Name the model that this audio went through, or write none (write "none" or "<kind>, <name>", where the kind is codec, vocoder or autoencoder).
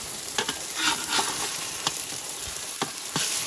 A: vocoder, BigVGAN v2